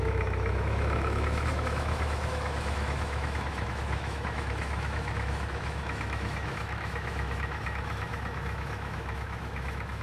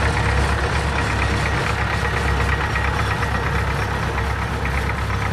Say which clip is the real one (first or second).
second